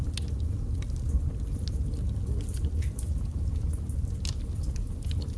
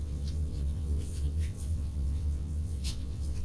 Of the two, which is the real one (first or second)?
first